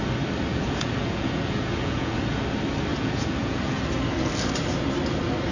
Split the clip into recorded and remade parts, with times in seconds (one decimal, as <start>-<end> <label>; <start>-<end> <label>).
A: 0.0-0.5 recorded; 0.5-2.4 remade; 2.4-2.9 recorded; 2.9-3.8 remade; 3.8-5.5 recorded